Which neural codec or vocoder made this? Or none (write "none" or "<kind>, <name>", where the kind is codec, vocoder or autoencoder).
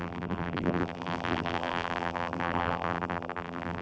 vocoder, BigVGAN v2